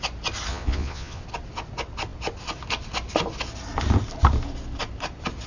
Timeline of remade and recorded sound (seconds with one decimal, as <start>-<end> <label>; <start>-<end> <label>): 0.0-0.5 recorded; 0.5-1.2 remade; 1.2-5.5 recorded